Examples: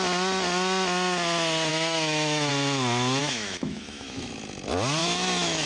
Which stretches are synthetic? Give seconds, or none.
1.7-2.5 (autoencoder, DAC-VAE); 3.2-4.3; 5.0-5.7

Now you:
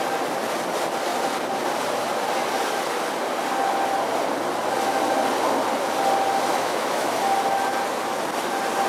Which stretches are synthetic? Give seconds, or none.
6.5-7.1 (autoencoder, DAC-VAE)

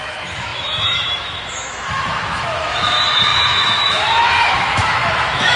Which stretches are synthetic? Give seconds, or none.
0.0-5.6 (autoencoder, DAC-VAE)

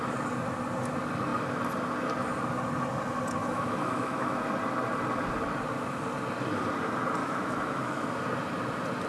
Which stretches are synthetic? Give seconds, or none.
3.4-4.5 (autoencoder, DAC-VAE); 7.2-8.1

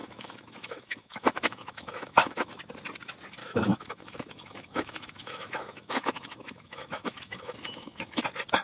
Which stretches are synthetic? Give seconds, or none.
0.0-2.6 (autoencoder, DAC-VAE); 3.4-8.2

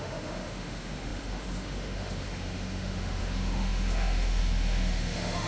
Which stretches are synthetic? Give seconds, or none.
0.0-5.5 (autoencoder, DAC-VAE)